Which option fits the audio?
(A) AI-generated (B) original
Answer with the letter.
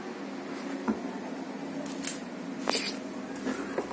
B